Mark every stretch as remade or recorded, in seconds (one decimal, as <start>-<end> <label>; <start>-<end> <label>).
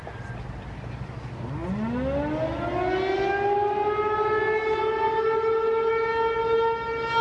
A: 0.0-7.2 recorded